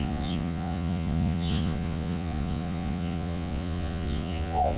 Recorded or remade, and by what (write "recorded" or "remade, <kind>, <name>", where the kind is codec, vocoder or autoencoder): remade, vocoder, Vocos